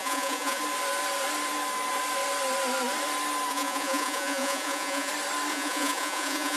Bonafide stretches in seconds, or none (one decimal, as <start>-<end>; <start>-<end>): 0.6-3.5; 5.1-5.5